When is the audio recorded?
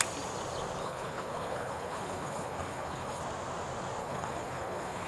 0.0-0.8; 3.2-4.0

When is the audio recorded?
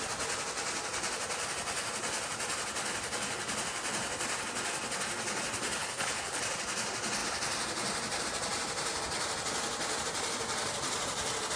0.0-5.8; 6.4-11.6